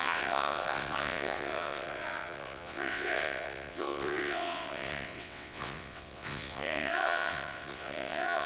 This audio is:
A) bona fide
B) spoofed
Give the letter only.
B